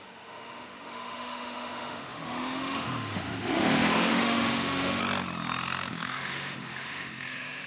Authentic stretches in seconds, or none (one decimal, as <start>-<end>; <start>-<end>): 5.0-5.9